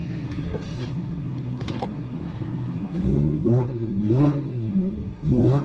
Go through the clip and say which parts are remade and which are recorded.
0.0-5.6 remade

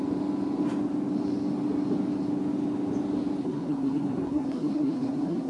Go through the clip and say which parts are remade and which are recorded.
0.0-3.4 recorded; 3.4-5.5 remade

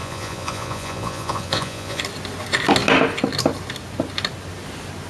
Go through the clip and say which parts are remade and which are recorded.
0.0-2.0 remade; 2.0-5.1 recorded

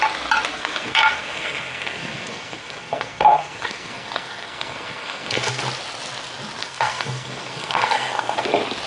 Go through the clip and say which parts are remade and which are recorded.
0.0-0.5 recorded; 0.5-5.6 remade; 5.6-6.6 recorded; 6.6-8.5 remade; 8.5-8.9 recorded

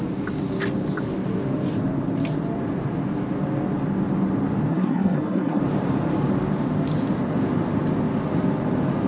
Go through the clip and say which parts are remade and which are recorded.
0.0-4.7 recorded; 4.7-5.6 remade; 5.6-9.1 recorded

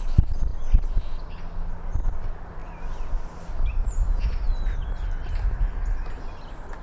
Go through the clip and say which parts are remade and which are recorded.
0.0-6.8 recorded

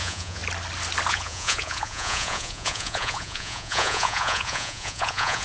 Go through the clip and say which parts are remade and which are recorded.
0.0-0.4 remade; 0.4-1.1 recorded; 1.1-5.4 remade